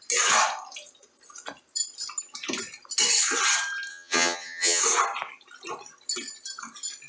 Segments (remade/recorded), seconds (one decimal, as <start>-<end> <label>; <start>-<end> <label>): 0.0-3.9 recorded; 3.9-4.8 remade; 4.8-7.1 recorded